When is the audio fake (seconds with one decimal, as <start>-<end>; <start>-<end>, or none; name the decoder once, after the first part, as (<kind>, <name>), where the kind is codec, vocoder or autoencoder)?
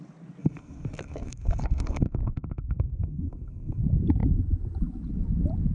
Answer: 0.4-3.8 (codec, SNAC)